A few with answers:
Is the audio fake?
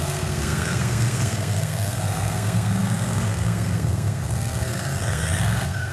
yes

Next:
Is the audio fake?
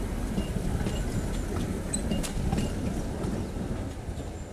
no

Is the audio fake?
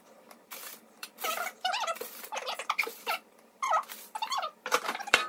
yes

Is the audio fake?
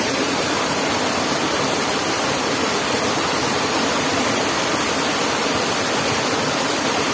yes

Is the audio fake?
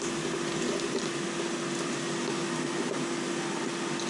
no